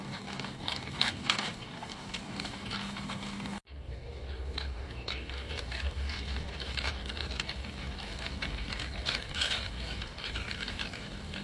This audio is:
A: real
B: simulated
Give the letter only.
B